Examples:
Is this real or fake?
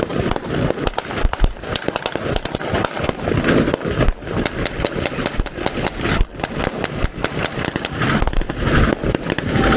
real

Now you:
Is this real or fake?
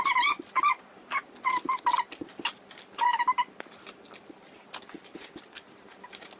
real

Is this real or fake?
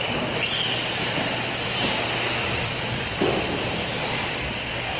real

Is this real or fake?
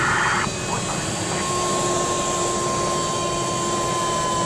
real